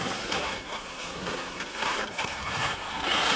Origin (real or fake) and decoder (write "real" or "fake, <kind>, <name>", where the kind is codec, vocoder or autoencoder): fake, codec, SNAC